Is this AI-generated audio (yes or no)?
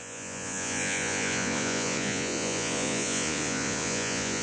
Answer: yes